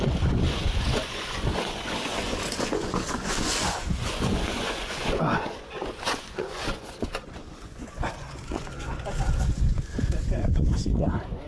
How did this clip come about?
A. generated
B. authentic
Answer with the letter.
A